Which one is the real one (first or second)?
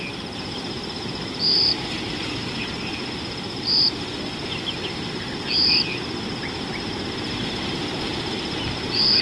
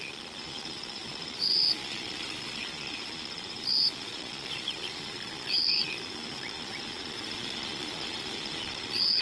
first